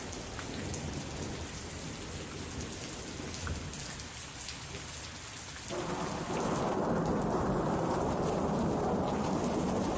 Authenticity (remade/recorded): recorded